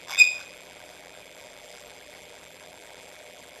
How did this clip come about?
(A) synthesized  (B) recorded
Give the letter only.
A